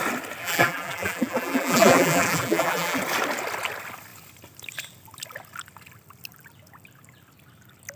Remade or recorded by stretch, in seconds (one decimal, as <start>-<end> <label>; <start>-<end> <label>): 0.0-0.4 recorded; 0.4-3.0 remade; 3.0-8.0 recorded